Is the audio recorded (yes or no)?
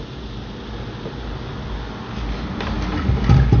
yes